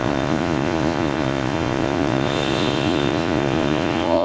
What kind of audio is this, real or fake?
fake